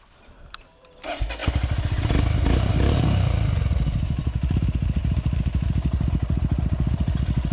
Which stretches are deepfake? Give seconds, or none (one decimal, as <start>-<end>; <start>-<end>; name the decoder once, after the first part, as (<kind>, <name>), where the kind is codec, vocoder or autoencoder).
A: none